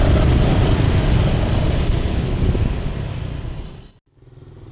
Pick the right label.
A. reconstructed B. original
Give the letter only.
B